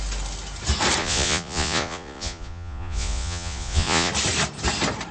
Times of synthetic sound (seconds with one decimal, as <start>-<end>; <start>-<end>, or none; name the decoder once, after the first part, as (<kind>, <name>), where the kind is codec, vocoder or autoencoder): 1.0-4.1 (vocoder, Vocos)